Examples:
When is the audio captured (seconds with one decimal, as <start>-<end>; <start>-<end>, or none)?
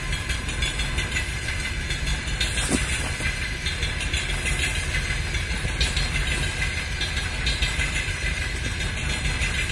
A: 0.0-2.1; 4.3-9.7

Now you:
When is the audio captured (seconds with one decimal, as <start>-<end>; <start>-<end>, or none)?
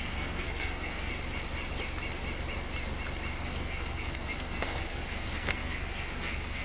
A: 1.1-3.4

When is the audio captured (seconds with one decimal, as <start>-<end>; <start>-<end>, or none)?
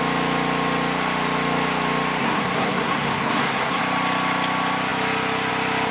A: 0.0-2.2; 3.8-5.9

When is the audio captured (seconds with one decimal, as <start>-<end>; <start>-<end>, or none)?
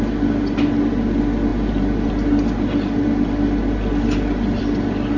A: 0.0-5.2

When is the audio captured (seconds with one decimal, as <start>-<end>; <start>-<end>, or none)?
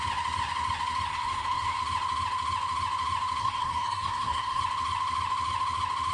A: 0.0-1.1; 1.8-3.4; 4.6-6.1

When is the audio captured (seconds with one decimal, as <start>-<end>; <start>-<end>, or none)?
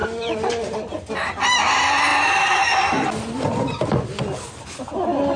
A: 1.1-2.1